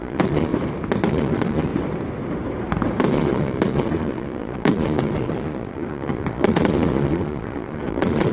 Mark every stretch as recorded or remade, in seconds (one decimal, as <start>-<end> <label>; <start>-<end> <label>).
0.0-0.5 remade; 0.5-1.1 recorded; 1.1-1.7 remade; 1.7-3.1 recorded; 3.1-8.3 remade